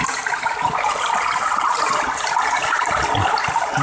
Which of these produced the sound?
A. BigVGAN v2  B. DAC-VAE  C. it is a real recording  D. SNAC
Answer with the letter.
C